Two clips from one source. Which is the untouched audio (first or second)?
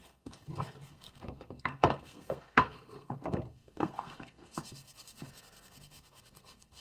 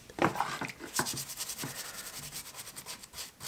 second